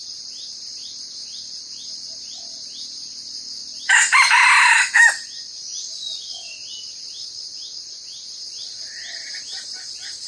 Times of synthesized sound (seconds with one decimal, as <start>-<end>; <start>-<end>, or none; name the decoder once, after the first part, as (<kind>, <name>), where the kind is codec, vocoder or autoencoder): 0.0-3.6 (vocoder, BigVGAN v2); 7.8-10.3